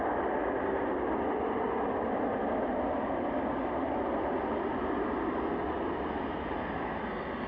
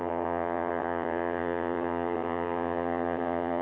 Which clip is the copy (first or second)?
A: second